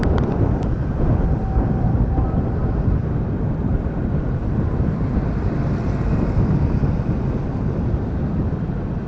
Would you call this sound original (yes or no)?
yes